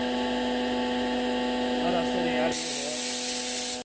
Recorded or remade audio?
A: recorded